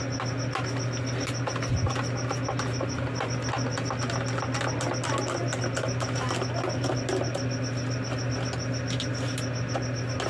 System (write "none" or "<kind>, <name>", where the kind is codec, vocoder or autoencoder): none